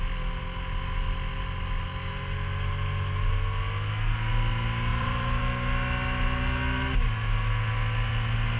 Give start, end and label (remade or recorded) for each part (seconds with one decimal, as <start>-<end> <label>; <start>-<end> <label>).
0.0-4.9 recorded; 4.9-5.4 remade; 5.4-8.6 recorded